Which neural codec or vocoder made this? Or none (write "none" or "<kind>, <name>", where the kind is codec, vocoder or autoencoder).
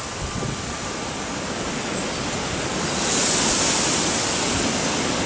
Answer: none